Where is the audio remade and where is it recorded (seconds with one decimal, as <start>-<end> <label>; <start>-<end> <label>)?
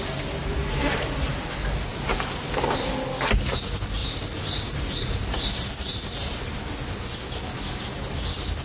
0.0-0.4 recorded; 0.4-1.3 remade; 1.3-4.0 recorded; 4.0-6.5 remade; 6.5-8.6 recorded